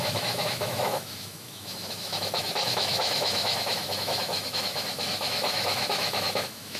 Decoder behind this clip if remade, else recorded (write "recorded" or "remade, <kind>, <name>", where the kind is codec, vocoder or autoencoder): remade, autoencoder, DAC-VAE